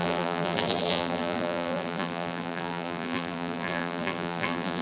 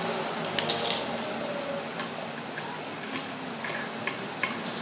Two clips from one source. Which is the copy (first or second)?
first